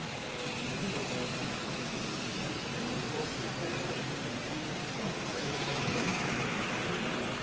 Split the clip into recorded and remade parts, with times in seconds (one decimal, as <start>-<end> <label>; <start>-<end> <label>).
0.0-1.4 recorded; 1.4-2.0 remade; 2.0-5.3 recorded; 5.3-6.8 remade; 6.8-7.4 recorded